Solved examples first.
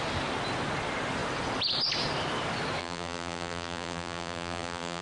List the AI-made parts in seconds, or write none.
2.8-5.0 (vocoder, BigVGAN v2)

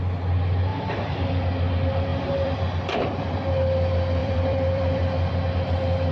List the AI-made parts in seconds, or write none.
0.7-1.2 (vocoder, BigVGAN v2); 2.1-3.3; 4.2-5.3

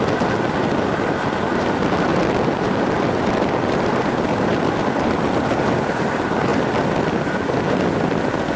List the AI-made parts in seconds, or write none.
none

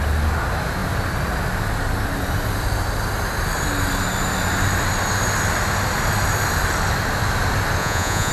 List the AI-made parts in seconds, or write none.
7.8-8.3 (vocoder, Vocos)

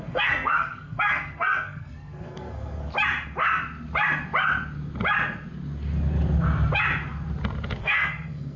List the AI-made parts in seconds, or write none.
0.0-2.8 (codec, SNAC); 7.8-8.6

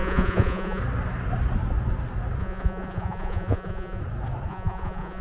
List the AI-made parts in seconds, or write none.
0.0-0.8 (vocoder, Vocos); 2.4-4.0; 4.5-5.2